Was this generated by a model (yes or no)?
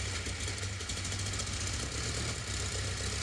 no